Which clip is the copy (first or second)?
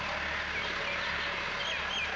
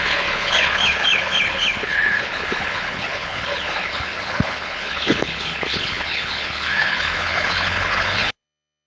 second